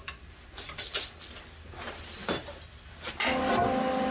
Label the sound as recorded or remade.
recorded